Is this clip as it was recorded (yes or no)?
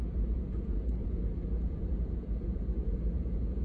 no